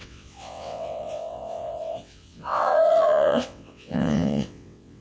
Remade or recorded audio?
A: remade